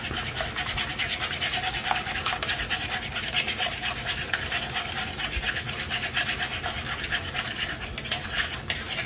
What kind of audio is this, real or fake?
real